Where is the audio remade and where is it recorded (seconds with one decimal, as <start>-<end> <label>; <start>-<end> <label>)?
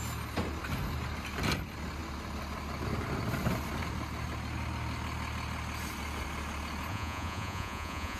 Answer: 0.0-6.9 recorded; 6.9-8.2 remade